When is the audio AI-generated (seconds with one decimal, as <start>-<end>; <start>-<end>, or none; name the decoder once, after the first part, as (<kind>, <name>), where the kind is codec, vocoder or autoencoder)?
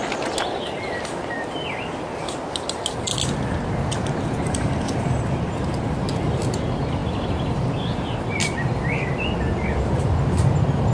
none